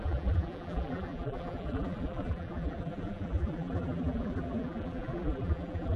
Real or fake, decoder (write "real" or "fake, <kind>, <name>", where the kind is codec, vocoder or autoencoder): fake, vocoder, BigVGAN v2